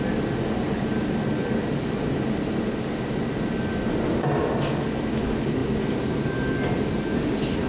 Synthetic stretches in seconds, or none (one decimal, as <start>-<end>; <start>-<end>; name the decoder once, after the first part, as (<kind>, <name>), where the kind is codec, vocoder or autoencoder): none